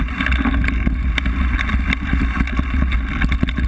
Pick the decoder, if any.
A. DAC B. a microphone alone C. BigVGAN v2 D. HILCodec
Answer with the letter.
B